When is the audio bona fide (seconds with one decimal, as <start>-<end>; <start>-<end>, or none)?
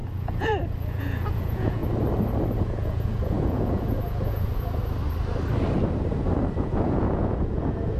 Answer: 1.8-2.6; 4.8-6.5